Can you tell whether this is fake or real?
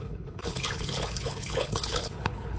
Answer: fake